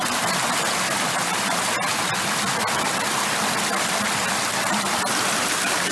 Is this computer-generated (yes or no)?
no